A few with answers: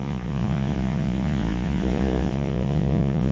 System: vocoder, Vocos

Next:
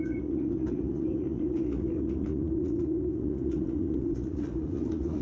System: vocoder, Vocos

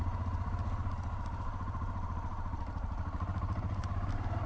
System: vocoder, BigVGAN v2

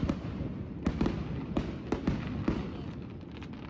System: none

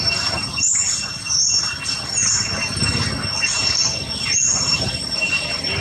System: none